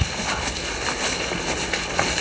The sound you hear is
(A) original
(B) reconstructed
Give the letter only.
A